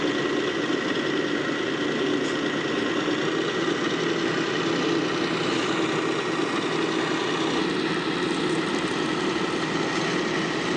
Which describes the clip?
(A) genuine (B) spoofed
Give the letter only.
A